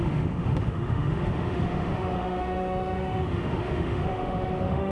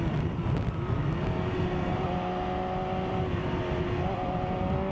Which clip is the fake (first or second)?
first